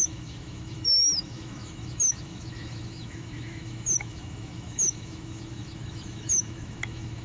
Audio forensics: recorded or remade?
remade